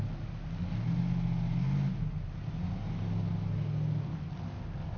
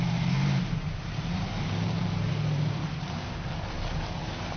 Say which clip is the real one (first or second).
first